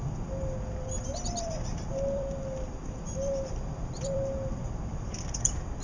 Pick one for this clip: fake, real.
fake